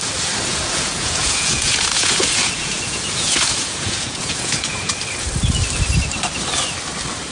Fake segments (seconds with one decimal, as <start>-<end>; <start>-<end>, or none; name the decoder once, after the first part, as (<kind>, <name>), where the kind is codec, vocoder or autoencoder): 0.5-4.9 (vocoder, Vocos)